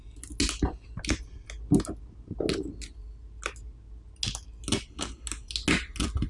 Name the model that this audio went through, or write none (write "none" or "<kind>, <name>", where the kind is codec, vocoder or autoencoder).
none